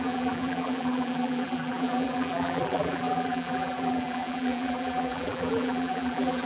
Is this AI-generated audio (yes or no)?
yes